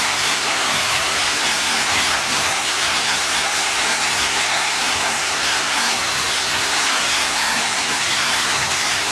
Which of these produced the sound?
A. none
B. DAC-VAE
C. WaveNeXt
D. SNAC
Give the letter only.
D